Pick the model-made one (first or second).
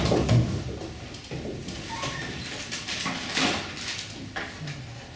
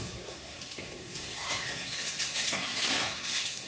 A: second